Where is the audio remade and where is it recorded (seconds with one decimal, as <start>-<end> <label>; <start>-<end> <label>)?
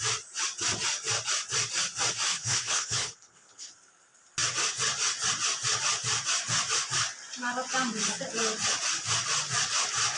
0.0-2.3 recorded; 2.3-3.7 remade; 3.7-10.2 recorded